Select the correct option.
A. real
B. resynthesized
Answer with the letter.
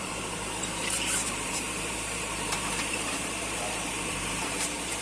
B